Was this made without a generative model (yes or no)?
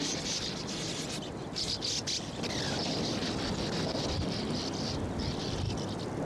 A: yes